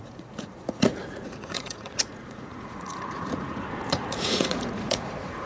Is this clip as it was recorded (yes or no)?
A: no